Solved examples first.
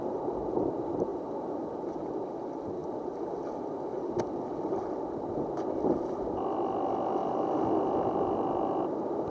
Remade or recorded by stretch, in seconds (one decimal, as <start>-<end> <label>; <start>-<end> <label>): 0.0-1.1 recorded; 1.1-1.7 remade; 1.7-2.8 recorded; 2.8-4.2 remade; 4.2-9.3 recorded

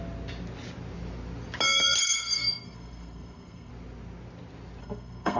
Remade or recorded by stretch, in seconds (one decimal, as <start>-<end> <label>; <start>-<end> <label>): 0.0-2.0 recorded; 2.0-3.7 remade; 3.7-4.8 recorded; 4.8-5.4 remade

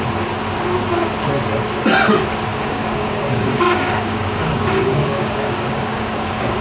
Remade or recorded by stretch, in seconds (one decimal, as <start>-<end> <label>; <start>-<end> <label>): 0.0-2.5 recorded; 2.5-6.6 remade

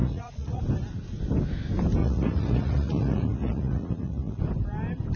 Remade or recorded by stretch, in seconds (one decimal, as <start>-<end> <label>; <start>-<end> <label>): 0.0-0.6 remade; 0.6-2.0 recorded; 2.0-4.4 remade; 4.4-5.2 recorded

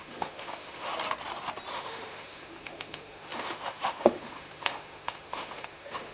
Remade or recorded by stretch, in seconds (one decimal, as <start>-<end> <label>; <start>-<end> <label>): 0.0-0.9 remade; 0.9-1.7 recorded; 1.7-6.1 remade

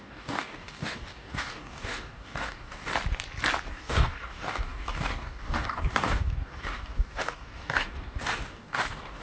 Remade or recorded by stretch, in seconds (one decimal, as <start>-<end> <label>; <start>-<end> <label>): 0.0-2.9 remade; 2.9-3.7 recorded; 3.7-9.2 remade

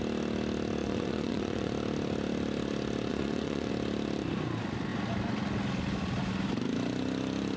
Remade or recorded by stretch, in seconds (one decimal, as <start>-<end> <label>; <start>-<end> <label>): 0.0-0.8 recorded; 0.8-1.7 remade; 1.7-3.1 recorded; 3.1-3.7 remade; 3.7-7.6 recorded

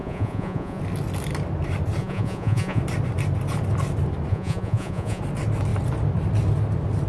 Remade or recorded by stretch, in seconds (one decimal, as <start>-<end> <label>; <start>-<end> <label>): 0.0-0.8 remade; 0.8-2.0 recorded; 2.0-2.8 remade; 2.8-4.3 recorded; 4.3-5.2 remade; 5.2-7.1 recorded